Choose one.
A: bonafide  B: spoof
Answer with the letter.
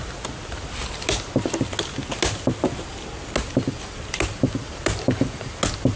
A